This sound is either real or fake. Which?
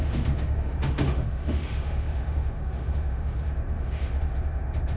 fake